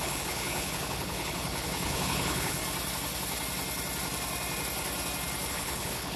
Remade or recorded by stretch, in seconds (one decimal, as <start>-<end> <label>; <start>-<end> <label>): 0.0-2.6 remade; 2.6-5.5 recorded; 5.5-6.2 remade

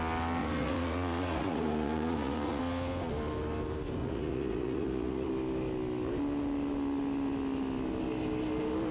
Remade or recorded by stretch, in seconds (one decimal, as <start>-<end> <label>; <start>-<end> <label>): 0.0-0.4 recorded; 0.4-2.6 remade; 2.6-4.0 recorded; 4.0-5.3 remade; 5.3-8.9 recorded